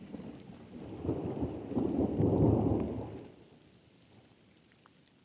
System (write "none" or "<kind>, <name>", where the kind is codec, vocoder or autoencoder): vocoder, BigVGAN v2